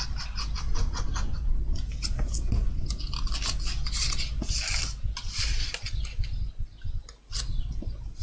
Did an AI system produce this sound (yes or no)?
no